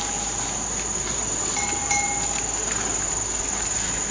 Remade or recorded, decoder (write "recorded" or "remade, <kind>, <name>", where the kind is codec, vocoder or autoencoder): recorded